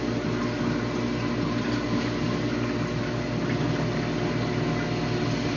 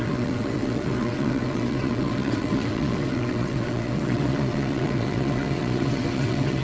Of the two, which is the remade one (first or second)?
second